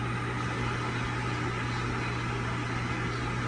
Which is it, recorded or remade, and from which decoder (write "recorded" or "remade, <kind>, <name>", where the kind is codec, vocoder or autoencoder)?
recorded